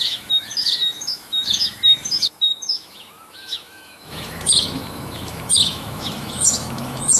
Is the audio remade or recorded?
remade